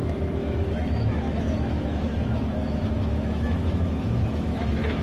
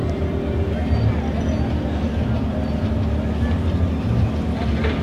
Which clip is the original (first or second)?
second